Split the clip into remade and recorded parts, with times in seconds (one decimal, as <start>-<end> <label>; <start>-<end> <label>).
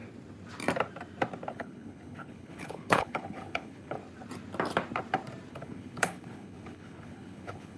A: 0.0-1.5 recorded; 1.5-4.0 remade; 4.0-5.5 recorded; 5.5-7.8 remade